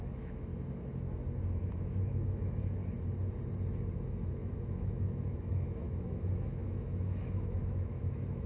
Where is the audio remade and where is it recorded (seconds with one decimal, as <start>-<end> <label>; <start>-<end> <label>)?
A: 0.0-0.5 remade; 0.5-1.7 recorded; 1.7-2.8 remade; 2.8-3.9 recorded; 3.9-8.5 remade